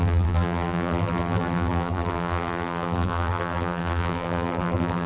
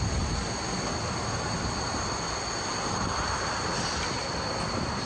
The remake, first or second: first